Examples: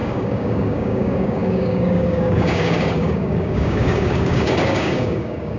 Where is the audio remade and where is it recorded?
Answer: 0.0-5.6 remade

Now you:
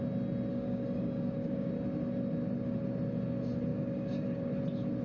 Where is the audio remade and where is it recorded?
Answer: 0.0-0.5 recorded; 0.5-1.7 remade; 1.7-3.7 recorded; 3.7-4.5 remade; 4.5-5.0 recorded

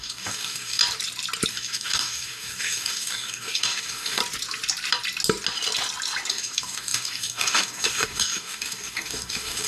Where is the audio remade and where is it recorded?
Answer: 0.0-0.8 remade; 0.8-1.5 recorded; 1.5-4.2 remade; 4.2-6.3 recorded; 6.3-9.7 remade

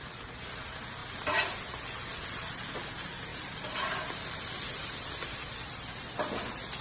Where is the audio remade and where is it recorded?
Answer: 0.0-6.8 recorded

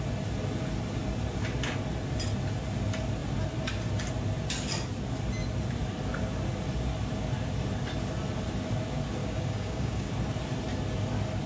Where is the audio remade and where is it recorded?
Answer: 0.0-9.2 recorded; 9.2-10.1 remade; 10.1-11.5 recorded

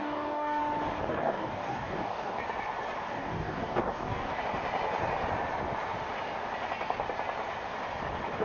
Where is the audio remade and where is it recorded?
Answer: 0.0-0.6 remade; 0.6-1.1 recorded; 1.1-2.4 remade; 2.4-3.1 recorded; 3.1-4.4 remade; 4.4-8.4 recorded